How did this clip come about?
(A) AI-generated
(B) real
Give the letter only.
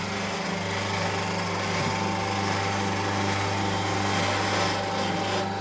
B